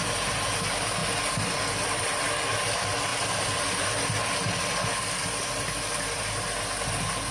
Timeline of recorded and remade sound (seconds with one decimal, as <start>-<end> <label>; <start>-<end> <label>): 0.0-7.3 recorded